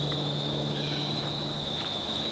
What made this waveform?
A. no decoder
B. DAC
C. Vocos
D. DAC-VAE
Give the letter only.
D